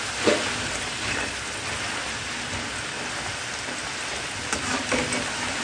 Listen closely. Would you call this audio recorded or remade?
recorded